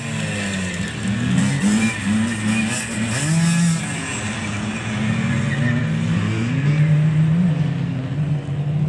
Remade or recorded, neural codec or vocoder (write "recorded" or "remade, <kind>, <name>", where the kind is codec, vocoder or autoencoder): recorded